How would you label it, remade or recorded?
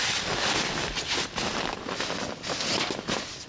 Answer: recorded